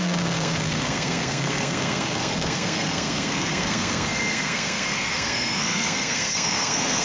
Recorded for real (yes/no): no